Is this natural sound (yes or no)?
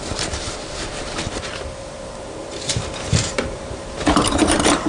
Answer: no